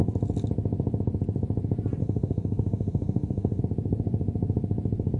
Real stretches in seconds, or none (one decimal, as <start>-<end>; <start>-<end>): 0.0-2.0; 3.6-5.2